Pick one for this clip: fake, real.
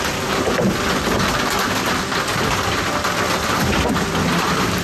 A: real